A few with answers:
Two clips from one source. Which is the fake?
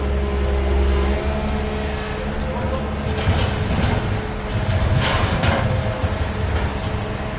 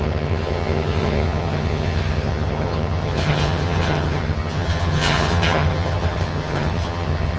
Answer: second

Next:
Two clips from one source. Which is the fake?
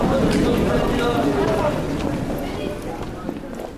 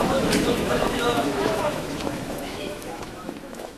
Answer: second